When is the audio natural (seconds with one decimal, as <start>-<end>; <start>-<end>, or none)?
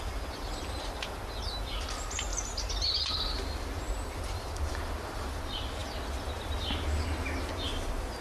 0.0-2.3; 4.7-5.8; 6.5-8.2